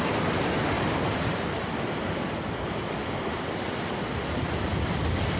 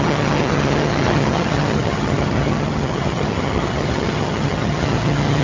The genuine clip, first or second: first